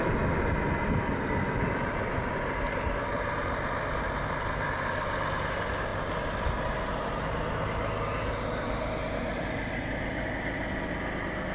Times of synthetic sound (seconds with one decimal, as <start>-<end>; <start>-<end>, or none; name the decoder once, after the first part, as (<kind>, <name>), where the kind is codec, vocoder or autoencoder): none